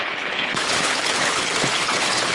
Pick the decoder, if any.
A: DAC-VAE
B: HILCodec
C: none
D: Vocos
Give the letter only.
B